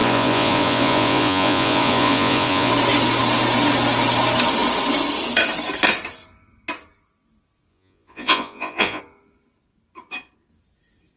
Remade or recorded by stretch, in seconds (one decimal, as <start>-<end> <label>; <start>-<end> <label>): 0.0-2.7 remade; 2.7-7.7 recorded; 7.7-9.0 remade; 9.0-11.2 recorded

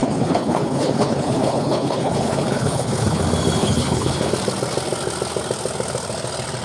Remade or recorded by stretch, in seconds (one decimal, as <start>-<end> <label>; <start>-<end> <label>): 0.0-3.2 remade; 3.2-3.6 recorded; 3.6-4.3 remade; 4.3-6.6 recorded

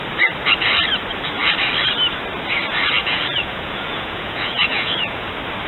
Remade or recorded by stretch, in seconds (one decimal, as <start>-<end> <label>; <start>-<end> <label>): 0.0-3.0 recorded; 3.0-5.3 remade; 5.3-5.7 recorded